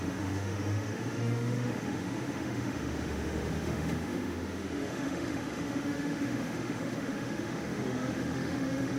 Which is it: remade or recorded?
remade